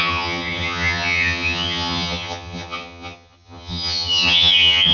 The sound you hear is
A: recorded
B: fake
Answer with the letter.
B